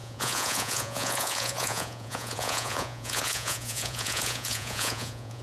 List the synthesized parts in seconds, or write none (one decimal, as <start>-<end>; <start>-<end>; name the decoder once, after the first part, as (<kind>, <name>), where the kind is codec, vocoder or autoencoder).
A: 0.0-5.4 (vocoder, Vocos)

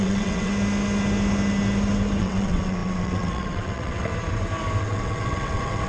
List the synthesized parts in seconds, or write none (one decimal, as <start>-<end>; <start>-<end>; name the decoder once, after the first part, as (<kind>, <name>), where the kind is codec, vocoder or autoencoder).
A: 0.0-0.5 (vocoder, WaveNeXt); 2.2-4.1; 4.8-5.9

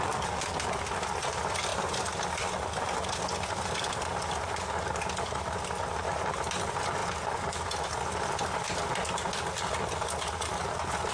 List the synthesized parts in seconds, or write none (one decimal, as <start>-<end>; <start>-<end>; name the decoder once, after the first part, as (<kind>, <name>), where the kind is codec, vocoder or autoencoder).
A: none

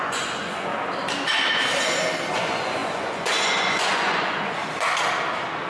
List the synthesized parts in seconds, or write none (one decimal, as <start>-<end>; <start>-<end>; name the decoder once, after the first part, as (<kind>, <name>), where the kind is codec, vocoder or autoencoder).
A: 0.0-0.7 (vocoder, Vocos); 2.3-4.6

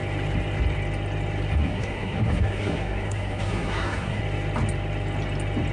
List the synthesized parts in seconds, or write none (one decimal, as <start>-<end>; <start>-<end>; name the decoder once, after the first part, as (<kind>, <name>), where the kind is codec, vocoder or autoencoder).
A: 1.6-4.2 (codec, SNAC)

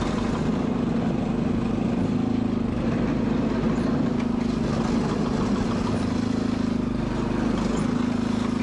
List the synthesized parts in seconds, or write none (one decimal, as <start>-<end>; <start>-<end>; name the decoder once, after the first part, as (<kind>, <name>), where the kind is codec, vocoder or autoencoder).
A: none

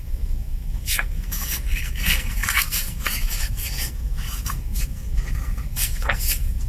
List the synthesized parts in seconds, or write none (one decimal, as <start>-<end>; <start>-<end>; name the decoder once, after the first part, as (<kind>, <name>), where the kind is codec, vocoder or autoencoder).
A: 0.0-6.7 (codec, SNAC)

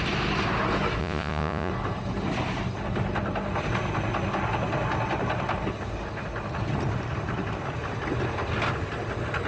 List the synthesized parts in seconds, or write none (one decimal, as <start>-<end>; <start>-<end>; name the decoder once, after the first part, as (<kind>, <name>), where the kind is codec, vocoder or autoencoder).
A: 1.0-1.7 (vocoder, Vocos)